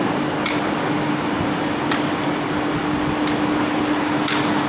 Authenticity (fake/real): real